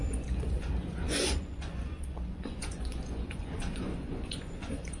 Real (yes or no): no